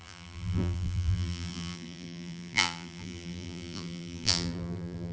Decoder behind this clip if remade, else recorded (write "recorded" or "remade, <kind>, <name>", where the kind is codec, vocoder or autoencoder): remade, vocoder, BigVGAN v2